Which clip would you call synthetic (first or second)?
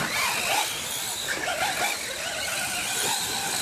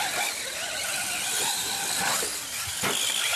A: second